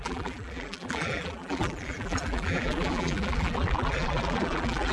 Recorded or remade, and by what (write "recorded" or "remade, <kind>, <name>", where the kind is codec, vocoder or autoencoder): remade, vocoder, BigVGAN v2